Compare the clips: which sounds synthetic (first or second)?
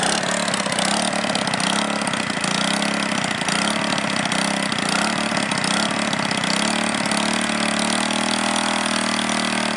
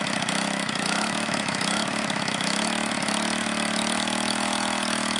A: second